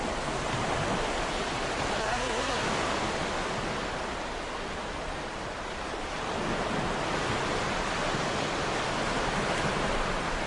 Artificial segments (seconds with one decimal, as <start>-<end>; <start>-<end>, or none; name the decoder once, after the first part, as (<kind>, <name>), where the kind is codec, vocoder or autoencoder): 2.0-2.6 (codec, SNAC)